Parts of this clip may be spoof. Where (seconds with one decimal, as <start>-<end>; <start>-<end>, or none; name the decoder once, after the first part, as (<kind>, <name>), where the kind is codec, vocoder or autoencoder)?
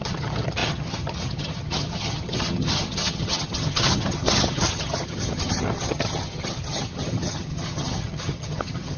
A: 0.0-9.0 (vocoder, HiFi-GAN)